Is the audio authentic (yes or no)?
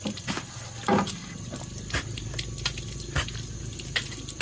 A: yes